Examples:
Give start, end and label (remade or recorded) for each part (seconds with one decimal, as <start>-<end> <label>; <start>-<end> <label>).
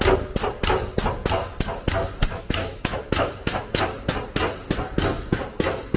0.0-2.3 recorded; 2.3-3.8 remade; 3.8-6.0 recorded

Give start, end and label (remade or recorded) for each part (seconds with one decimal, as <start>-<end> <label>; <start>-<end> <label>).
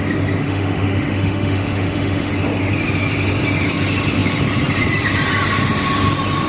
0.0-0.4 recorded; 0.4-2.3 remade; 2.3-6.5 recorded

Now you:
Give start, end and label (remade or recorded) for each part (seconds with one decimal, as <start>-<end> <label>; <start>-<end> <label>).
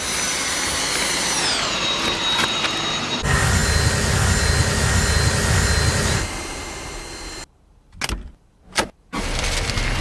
0.0-10.0 recorded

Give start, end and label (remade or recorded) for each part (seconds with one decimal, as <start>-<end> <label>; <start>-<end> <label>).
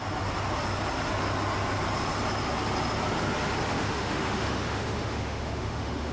0.0-3.7 recorded; 3.7-6.1 remade